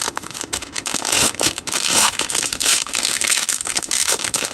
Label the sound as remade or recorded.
remade